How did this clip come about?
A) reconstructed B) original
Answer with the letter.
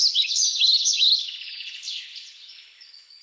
A